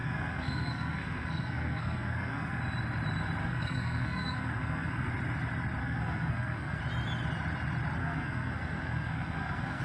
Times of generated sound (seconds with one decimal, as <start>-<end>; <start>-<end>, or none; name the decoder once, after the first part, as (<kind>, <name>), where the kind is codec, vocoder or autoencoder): 0.0-2.6 (codec, SNAC); 3.4-5.1; 5.8-6.8; 8.0-9.8